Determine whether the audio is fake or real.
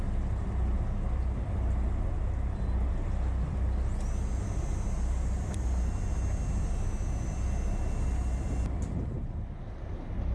real